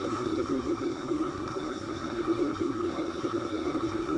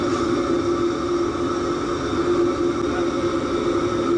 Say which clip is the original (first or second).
second